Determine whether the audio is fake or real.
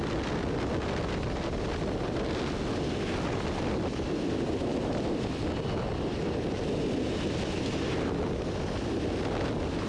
real